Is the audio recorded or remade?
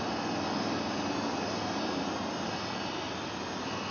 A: recorded